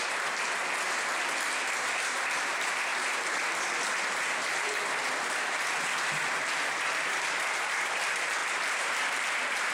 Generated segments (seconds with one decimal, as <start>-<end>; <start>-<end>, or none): 0.0-2.9; 4.5-9.7

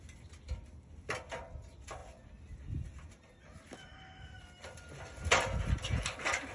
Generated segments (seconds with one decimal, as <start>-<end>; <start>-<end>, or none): none

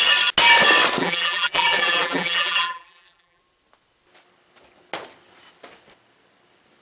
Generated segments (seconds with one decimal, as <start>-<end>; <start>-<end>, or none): 1.0-3.4

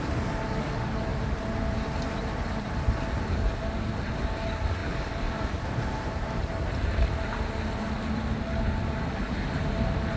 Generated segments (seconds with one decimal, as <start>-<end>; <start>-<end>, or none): 1.1-2.6; 4.8-6.5